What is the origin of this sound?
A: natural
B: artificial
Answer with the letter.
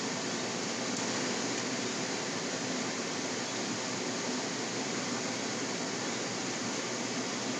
A